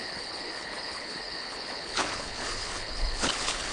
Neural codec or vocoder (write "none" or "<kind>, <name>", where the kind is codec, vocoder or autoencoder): codec, HILCodec